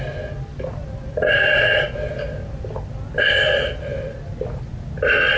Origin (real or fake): real